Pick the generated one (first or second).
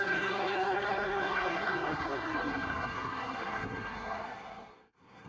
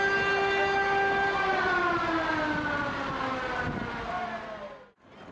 first